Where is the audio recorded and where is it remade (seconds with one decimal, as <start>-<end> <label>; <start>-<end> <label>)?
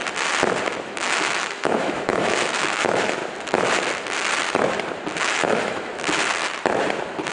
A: 0.0-0.8 recorded; 0.8-3.2 remade; 3.2-5.2 recorded; 5.2-5.9 remade; 5.9-7.3 recorded